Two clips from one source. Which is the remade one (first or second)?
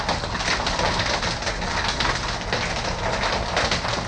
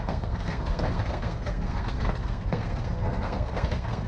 second